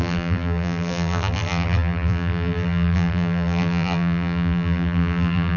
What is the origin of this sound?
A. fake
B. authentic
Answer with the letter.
A